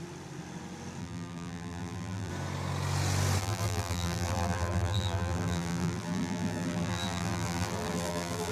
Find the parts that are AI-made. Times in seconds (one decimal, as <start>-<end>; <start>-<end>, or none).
1.0-2.3; 3.4-8.5